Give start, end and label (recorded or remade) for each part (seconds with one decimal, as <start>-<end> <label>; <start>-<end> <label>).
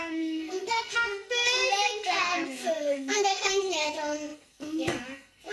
0.0-5.5 remade